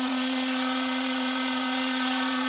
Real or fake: fake